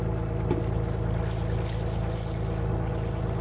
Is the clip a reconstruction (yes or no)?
no